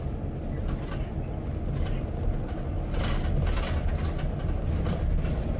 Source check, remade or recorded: recorded